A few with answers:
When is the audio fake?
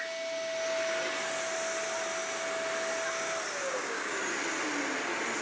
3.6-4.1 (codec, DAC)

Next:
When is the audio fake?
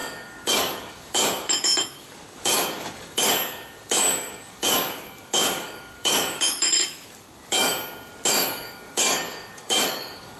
0.0-7.7 (codec, DAC); 8.3-10.4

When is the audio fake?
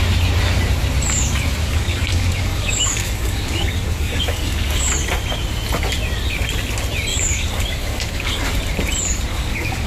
1.6-4.9 (codec, DAC); 7.1-8.4; 9.3-9.9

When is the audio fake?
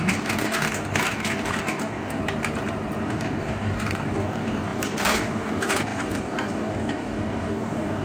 0.0-2.2 (codec, DAC); 3.0-8.0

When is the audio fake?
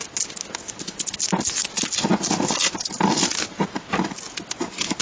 none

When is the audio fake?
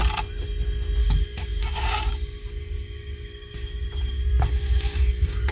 1.0-5.5 (codec, DAC)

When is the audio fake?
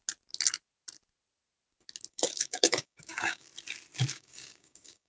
2.1-3.5 (codec, DAC); 4.1-5.1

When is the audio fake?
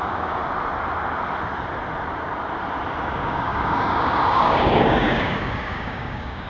0.0-0.4 (codec, DAC); 3.0-6.5